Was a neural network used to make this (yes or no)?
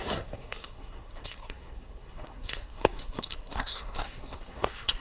yes